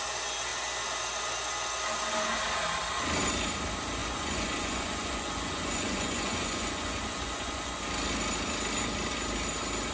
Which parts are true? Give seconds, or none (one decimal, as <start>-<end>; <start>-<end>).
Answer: 0.0-4.0; 7.8-9.9